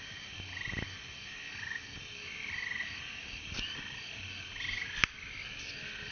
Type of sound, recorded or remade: recorded